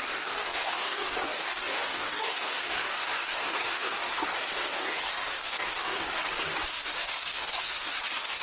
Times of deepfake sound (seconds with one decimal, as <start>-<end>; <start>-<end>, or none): 0.0-6.2; 6.7-8.4